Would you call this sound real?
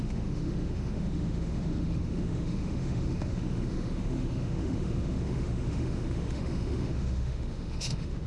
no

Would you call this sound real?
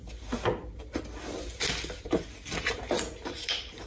yes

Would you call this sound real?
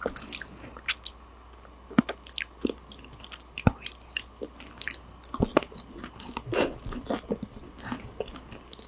yes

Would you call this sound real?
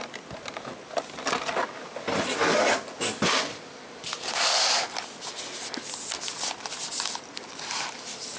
yes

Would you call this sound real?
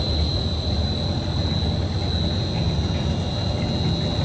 yes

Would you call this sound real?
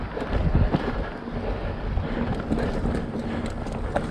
yes